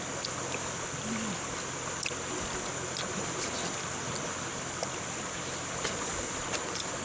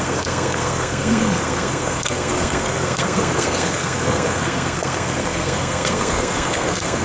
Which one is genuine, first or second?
first